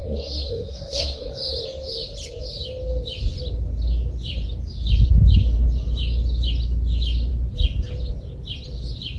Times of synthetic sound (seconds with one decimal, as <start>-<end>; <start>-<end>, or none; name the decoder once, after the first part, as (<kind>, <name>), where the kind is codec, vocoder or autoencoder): 0.0-1.3 (codec, SNAC)